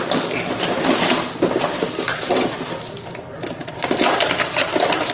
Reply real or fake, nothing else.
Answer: real